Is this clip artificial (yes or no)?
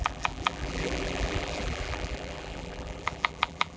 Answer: yes